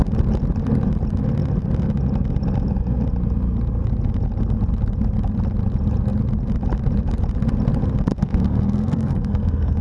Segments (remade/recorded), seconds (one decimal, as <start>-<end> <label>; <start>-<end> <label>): 0.0-8.1 recorded; 8.1-9.8 remade